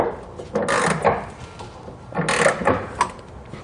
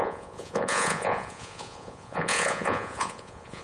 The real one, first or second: first